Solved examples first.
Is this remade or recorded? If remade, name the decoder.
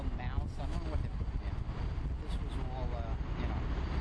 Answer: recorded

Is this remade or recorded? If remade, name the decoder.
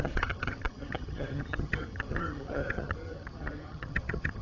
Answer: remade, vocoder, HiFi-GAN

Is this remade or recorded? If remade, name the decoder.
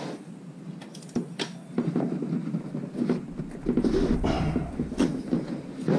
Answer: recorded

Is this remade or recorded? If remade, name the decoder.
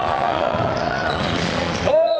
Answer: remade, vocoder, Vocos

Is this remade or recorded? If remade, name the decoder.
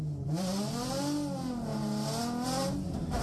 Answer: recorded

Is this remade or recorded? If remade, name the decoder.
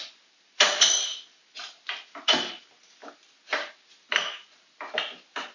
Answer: recorded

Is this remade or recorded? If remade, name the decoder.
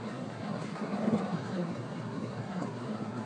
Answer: remade, codec, SNAC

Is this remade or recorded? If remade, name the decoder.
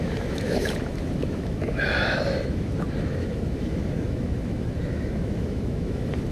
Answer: remade, autoencoder, DAC-VAE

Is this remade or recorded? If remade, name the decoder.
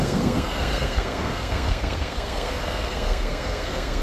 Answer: remade, codec, SNAC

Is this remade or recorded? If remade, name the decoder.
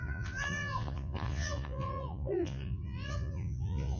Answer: remade, vocoder, Vocos